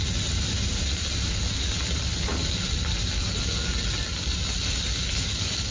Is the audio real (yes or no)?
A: yes